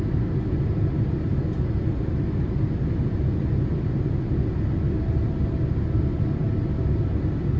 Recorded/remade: recorded